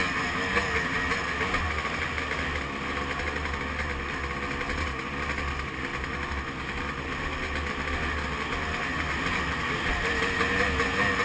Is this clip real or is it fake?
real